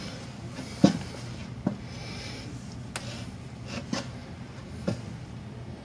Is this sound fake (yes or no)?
no